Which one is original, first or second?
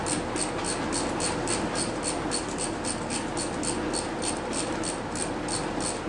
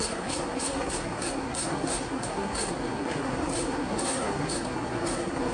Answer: first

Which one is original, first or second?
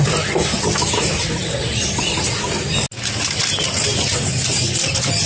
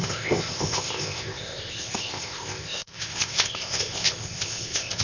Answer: first